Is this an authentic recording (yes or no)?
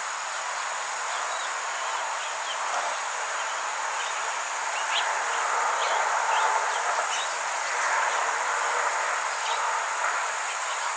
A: yes